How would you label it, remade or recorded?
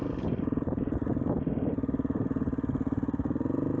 recorded